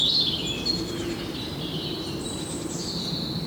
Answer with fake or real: real